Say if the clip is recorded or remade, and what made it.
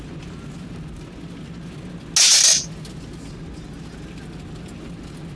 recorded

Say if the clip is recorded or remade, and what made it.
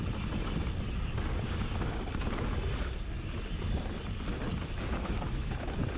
recorded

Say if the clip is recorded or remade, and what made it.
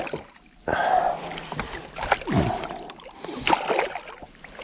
recorded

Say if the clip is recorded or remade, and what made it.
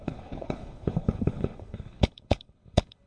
remade, codec, HILCodec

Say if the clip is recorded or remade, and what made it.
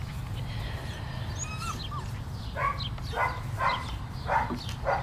recorded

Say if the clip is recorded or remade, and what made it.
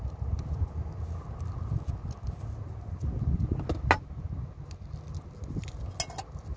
recorded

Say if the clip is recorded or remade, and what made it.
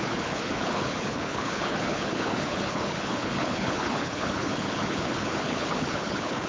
remade, codec, HILCodec